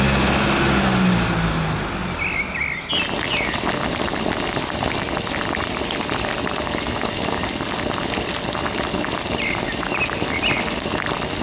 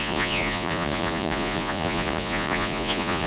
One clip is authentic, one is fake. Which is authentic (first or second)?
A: first